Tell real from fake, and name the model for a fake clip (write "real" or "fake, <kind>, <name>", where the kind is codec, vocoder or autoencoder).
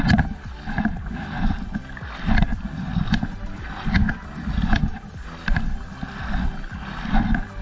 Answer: real